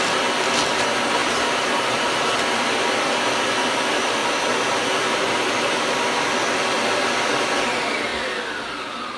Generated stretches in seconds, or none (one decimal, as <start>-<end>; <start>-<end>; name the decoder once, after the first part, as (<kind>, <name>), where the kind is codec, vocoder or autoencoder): 1.2-2.1 (vocoder, BigVGAN v2)